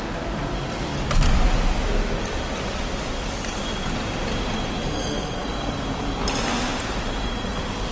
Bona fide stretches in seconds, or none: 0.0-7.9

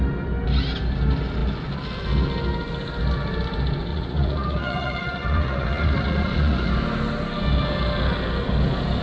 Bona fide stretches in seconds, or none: 0.0-3.9; 6.7-9.0

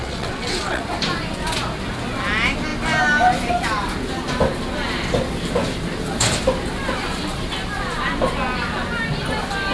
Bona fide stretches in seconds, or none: 0.8-9.7

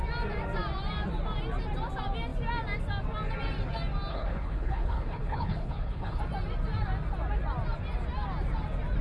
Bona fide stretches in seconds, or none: 0.0-4.1; 6.2-9.0